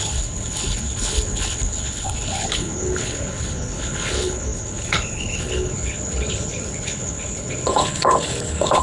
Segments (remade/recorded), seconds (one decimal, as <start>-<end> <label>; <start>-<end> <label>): 0.0-8.8 remade